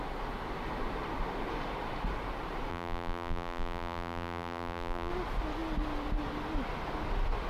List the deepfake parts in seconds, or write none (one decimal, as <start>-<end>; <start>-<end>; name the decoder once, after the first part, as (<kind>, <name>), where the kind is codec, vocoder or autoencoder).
2.7-5.1 (vocoder, BigVGAN v2)